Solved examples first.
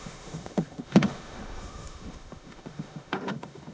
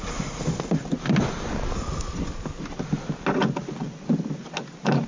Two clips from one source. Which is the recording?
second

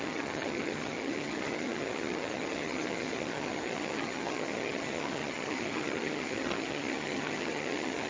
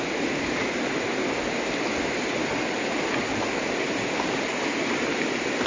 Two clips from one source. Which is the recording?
second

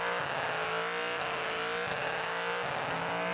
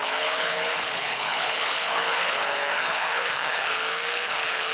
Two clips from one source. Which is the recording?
first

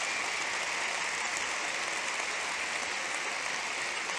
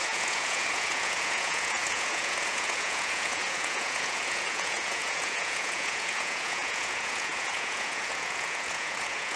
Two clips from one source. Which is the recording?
first